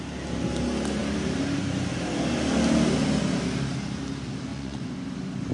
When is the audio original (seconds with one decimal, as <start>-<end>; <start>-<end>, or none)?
0.0-4.5; 5.0-5.5